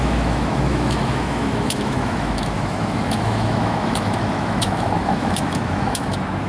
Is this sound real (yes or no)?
no